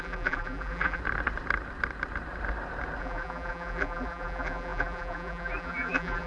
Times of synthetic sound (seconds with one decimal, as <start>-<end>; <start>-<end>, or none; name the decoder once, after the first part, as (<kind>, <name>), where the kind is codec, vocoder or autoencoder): 0.0-1.0 (vocoder, BigVGAN v2); 3.0-6.3